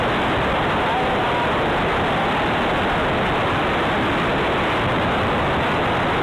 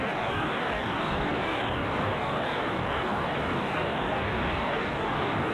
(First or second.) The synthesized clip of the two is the second